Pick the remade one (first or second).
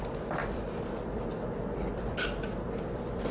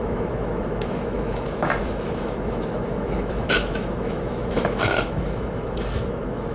second